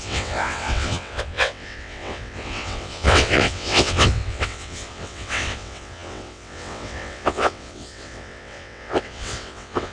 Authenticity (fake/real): fake